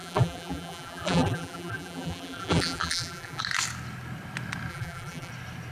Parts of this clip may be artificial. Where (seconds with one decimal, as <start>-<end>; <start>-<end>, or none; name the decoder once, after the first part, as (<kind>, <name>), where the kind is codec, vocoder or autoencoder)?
0.0-3.4 (vocoder, BigVGAN v2); 4.7-5.3

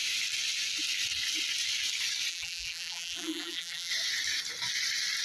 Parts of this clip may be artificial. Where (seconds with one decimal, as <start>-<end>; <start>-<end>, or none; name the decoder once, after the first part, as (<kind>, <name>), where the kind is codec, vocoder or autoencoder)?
2.3-3.9 (vocoder, BigVGAN v2)

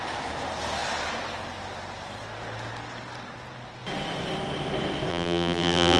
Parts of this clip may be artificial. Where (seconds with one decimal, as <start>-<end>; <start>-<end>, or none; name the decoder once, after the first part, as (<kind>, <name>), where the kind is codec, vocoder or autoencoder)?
5.1-6.0 (vocoder, BigVGAN v2)

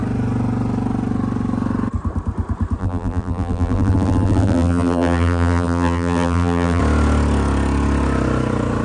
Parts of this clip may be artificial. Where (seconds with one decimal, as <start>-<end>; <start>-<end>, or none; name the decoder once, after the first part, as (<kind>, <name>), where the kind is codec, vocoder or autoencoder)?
2.8-6.8 (vocoder, BigVGAN v2)